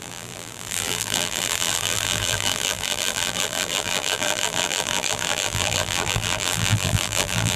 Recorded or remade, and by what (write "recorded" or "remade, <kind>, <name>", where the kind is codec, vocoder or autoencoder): remade, vocoder, BigVGAN v2